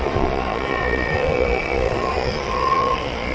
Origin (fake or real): fake